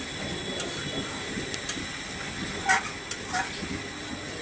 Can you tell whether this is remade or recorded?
recorded